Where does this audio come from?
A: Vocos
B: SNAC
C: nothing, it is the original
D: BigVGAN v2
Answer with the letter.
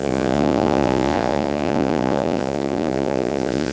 A